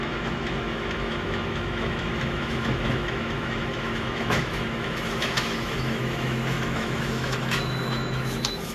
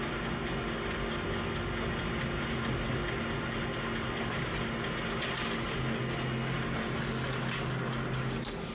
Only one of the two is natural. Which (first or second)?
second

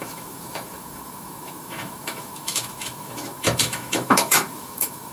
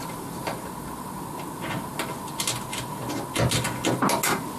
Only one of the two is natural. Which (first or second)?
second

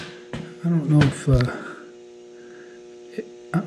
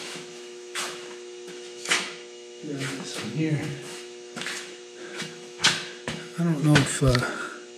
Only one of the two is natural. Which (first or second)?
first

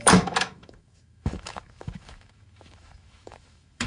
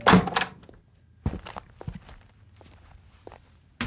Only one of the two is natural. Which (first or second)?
second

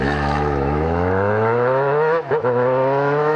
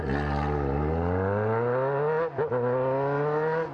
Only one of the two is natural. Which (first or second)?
second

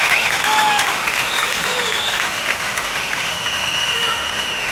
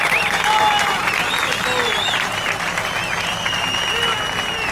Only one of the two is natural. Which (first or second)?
second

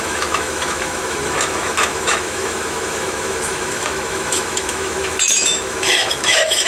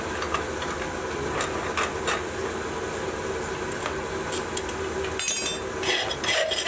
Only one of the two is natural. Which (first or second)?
second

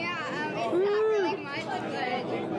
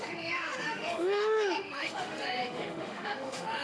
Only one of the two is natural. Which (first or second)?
first